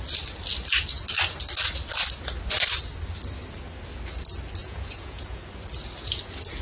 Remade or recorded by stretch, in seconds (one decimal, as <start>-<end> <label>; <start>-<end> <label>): 0.0-4.6 recorded; 4.6-5.4 remade; 5.4-6.6 recorded